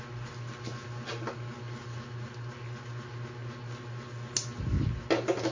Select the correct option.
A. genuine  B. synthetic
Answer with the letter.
A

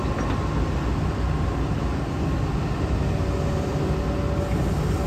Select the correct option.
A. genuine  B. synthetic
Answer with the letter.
A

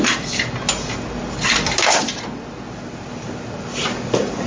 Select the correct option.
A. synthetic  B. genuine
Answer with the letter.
B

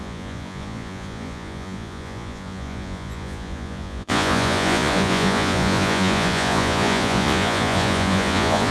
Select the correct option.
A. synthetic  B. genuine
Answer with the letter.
A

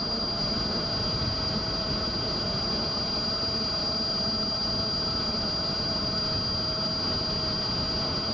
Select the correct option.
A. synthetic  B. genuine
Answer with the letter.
B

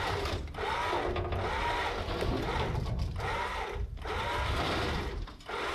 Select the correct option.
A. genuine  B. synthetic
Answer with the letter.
A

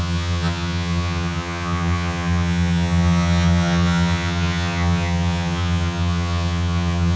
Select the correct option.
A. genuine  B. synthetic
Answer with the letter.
B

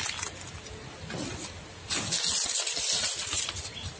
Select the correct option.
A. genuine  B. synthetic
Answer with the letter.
A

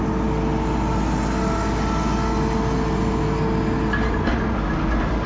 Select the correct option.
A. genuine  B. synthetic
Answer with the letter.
A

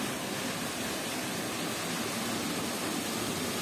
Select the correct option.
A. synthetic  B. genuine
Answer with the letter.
B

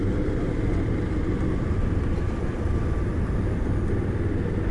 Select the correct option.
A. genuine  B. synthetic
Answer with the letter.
A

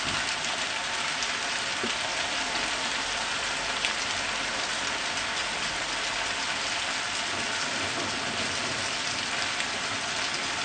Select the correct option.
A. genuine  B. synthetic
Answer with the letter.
A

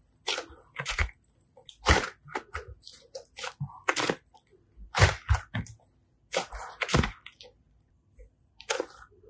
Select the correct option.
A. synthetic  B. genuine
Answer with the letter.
B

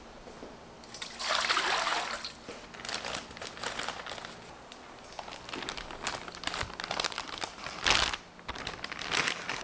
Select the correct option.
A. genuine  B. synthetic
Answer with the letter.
A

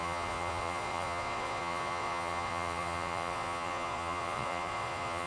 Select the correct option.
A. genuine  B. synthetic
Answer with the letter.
B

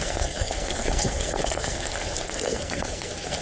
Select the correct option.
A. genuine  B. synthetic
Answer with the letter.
B